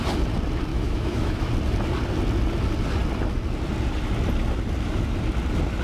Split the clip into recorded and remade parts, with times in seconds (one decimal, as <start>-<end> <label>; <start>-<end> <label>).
0.0-0.7 recorded; 0.7-1.5 remade; 1.5-5.8 recorded